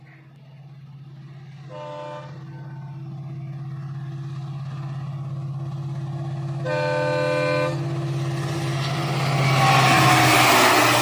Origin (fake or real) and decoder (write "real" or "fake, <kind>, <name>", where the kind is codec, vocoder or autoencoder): real